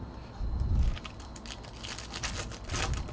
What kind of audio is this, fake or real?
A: real